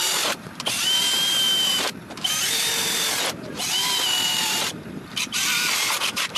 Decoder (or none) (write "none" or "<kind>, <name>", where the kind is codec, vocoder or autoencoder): vocoder, BigVGAN v2